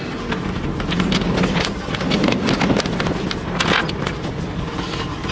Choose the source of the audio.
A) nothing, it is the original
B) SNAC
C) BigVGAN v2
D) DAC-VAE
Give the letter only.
A